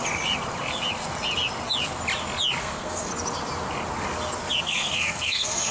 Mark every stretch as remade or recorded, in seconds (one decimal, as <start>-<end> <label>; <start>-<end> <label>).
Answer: 0.0-2.6 recorded; 2.6-3.1 remade; 3.1-4.6 recorded; 4.6-5.7 remade